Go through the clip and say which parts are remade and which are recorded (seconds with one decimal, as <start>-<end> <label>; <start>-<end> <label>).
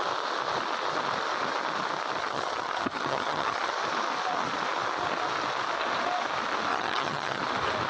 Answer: 0.0-2.2 recorded; 2.2-3.7 remade; 3.7-6.7 recorded; 6.7-7.4 remade; 7.4-7.9 recorded